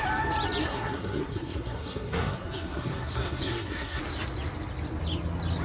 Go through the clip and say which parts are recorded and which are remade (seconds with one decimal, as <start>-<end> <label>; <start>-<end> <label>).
0.0-0.6 recorded; 0.6-4.0 remade; 4.0-5.6 recorded